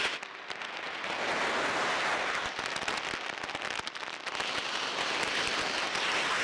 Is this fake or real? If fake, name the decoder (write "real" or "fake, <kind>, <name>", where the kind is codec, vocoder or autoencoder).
real